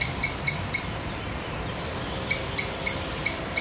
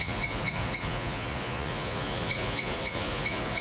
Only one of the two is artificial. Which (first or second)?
second